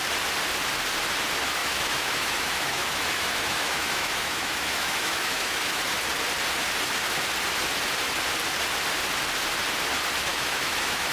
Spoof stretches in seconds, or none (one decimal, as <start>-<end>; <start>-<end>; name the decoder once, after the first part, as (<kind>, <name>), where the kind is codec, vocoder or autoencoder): 1.6-5.8 (autoencoder, DAC-VAE); 10.3-11.1